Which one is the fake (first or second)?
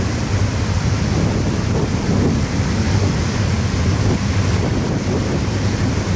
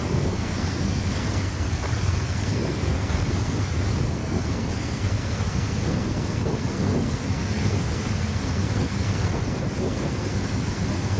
second